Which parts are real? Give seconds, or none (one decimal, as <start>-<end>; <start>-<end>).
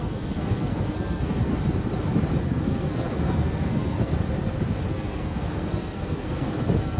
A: 1.5-2.4; 4.1-4.9